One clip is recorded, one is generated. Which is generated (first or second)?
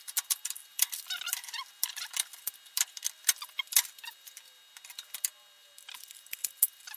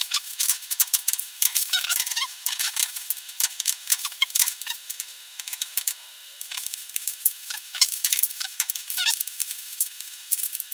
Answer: second